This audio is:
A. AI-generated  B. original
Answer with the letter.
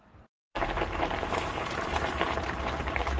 A